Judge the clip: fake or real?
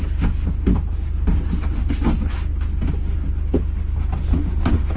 real